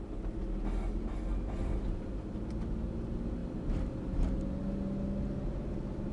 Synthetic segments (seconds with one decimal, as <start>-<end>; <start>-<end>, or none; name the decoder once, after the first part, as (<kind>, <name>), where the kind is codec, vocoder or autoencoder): none